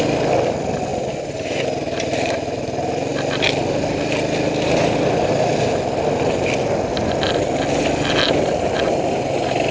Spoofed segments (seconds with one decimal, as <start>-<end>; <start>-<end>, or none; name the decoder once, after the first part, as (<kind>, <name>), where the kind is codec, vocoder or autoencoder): none